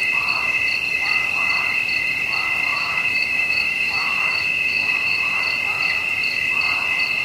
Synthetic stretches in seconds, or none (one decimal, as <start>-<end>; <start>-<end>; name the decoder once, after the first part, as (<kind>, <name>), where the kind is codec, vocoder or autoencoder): 2.7-5.4 (autoencoder, DAC-VAE)